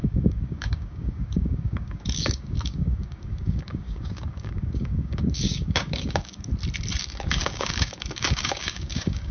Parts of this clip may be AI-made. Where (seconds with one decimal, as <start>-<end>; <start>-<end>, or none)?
0.0-6.5; 7.0-9.3